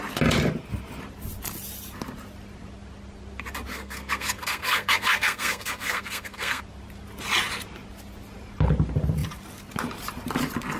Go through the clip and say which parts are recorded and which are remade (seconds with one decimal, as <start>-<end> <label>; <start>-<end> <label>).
0.0-3.7 recorded; 3.7-6.6 remade; 6.6-10.8 recorded